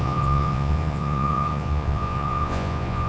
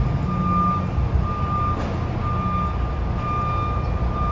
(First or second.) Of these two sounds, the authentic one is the second